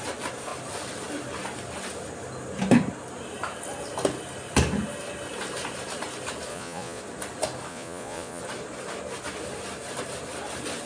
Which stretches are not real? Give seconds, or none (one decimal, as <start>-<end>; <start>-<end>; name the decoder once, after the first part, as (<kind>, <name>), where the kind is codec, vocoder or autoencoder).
6.5-7.0 (vocoder, Vocos); 7.7-8.4